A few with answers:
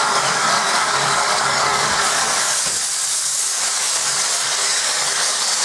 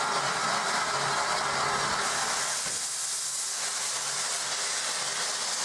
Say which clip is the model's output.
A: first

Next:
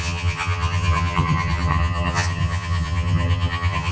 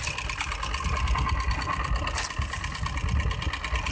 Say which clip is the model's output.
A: first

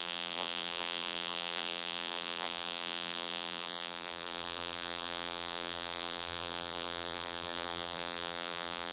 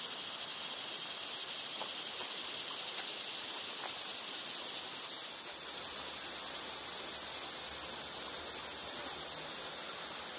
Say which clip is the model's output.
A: first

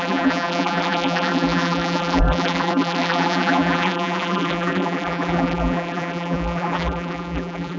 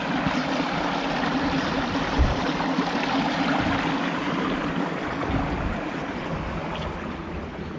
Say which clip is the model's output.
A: first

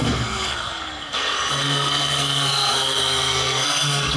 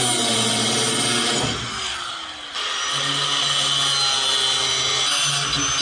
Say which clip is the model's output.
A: first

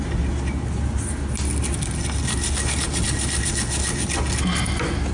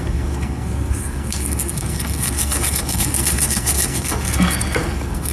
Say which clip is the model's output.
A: second